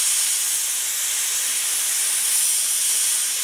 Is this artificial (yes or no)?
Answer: no